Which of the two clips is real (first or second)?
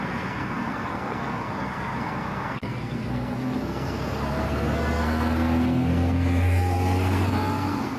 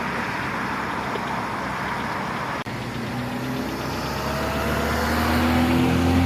second